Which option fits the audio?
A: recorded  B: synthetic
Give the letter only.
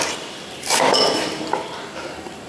A